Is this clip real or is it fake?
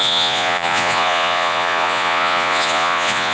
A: fake